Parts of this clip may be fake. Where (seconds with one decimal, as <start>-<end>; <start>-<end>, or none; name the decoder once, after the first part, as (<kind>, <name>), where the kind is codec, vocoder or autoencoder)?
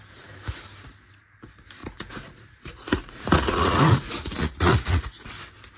1.8-5.3 (vocoder, Vocos)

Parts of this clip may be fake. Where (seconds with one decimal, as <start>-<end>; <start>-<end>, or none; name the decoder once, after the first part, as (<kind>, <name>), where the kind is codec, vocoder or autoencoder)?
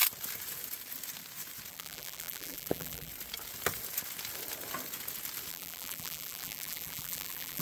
1.7-3.1 (vocoder, BigVGAN v2); 5.5-7.6